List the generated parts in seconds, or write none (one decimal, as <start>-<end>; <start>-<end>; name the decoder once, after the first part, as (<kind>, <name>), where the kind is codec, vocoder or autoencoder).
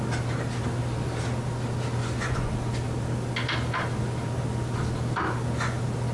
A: 2.0-2.5 (vocoder, Vocos)